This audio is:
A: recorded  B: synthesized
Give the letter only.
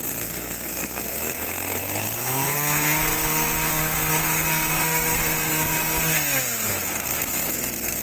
B